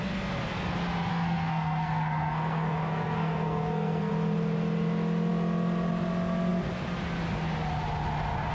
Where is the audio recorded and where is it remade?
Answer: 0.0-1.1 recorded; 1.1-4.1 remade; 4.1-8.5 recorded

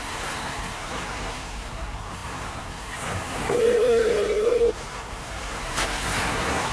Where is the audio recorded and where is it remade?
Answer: 0.0-6.7 remade